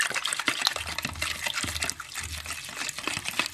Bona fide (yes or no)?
yes